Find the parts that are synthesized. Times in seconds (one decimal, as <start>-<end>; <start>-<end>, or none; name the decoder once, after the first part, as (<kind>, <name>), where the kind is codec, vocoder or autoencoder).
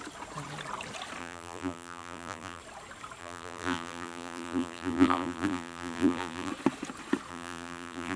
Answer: 1.2-2.6 (vocoder, BigVGAN v2); 3.2-6.5; 7.3-8.2